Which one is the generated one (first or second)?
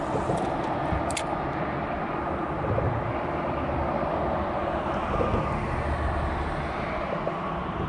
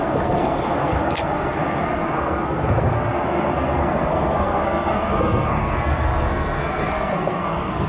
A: second